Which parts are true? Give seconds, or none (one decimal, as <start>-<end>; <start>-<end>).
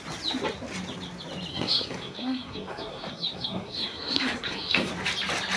0.0-1.5; 4.9-5.6